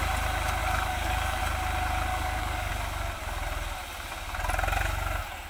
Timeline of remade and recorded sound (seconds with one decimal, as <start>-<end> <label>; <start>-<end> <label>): 0.0-0.6 recorded; 0.6-1.4 remade; 1.4-2.1 recorded; 2.1-2.7 remade; 2.7-5.5 recorded